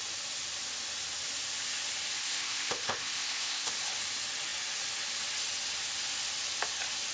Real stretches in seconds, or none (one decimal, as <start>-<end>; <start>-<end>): 0.0-2.2; 3.7-7.1

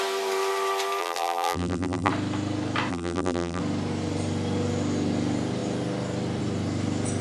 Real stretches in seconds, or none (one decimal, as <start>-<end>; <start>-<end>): 0.0-1.0; 2.1-2.9; 3.6-7.2